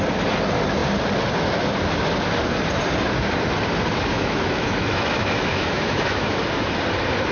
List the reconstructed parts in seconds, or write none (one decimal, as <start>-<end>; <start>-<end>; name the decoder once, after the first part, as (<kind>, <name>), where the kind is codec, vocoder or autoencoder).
4.1-6.4 (autoencoder, DAC-VAE)